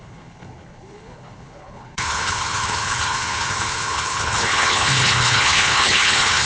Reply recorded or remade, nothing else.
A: remade